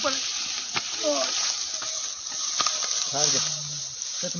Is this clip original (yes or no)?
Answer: yes